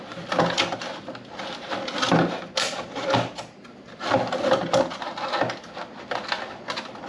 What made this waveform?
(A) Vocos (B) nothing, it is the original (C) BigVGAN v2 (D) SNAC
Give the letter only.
B